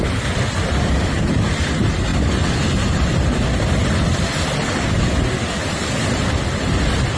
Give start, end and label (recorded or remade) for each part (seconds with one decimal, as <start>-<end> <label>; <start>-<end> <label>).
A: 0.0-7.2 recorded